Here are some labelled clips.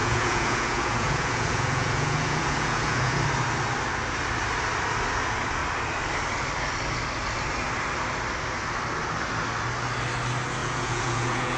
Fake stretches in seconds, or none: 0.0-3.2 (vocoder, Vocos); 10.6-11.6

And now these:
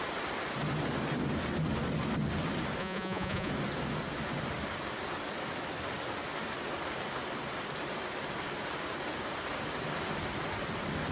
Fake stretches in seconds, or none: 2.8-3.5 (vocoder, Vocos)

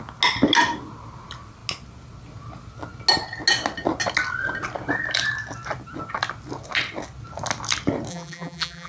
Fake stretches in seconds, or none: 8.1-8.9 (vocoder, BigVGAN v2)

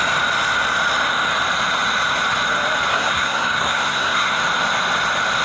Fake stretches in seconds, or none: 2.9-4.4 (codec, SNAC)

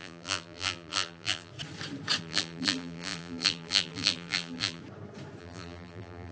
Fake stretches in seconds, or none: 0.0-1.5 (vocoder, BigVGAN v2); 2.2-4.8; 5.4-6.3